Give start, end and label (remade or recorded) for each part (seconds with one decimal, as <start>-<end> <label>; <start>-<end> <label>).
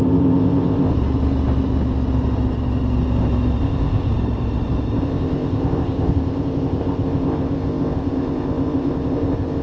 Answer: 0.0-0.9 remade; 0.9-3.6 recorded; 3.6-4.1 remade; 4.1-5.0 recorded; 5.0-9.6 remade